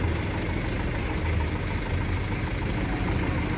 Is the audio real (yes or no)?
yes